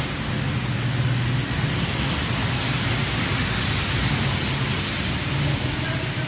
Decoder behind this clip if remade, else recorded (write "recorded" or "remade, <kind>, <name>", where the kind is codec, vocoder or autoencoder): recorded